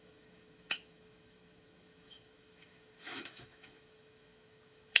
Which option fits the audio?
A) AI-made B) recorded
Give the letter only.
A